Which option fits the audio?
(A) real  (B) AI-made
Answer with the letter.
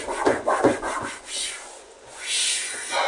B